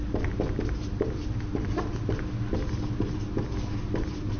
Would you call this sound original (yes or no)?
yes